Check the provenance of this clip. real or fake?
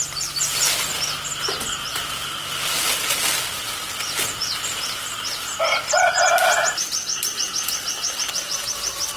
real